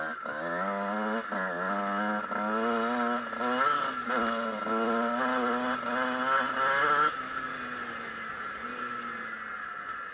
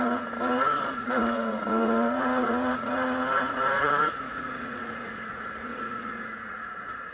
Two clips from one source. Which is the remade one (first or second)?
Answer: second